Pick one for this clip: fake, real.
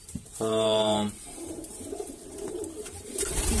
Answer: fake